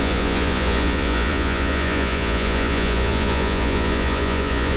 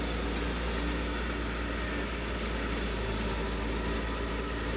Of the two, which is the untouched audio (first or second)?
second